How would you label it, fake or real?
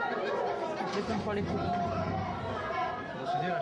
real